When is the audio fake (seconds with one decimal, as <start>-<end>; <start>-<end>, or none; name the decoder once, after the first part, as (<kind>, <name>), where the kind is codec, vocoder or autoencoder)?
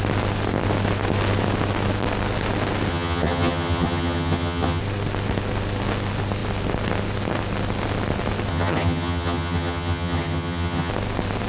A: 2.9-4.8 (vocoder, HiFi-GAN); 8.5-10.9